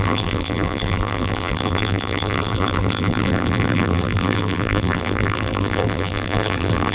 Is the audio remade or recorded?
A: remade